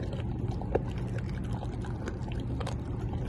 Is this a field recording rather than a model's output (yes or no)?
yes